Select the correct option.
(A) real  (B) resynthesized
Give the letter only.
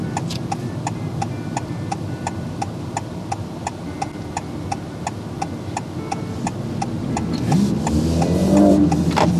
A